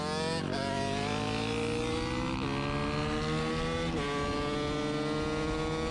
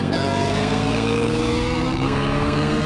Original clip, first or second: first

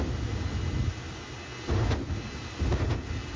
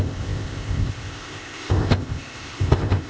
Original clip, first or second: first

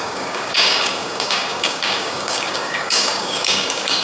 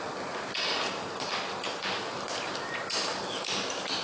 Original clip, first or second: second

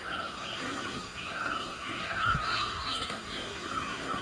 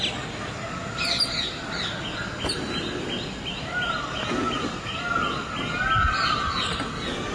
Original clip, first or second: second